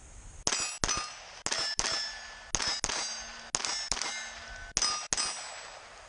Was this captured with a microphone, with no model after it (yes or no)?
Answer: yes